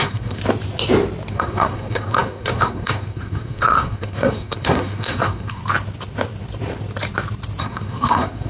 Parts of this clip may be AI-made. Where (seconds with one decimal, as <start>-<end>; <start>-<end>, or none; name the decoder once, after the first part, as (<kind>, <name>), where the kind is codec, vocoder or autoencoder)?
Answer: 0.0-0.4 (codec, SNAC); 1.3-5.6; 7.6-8.5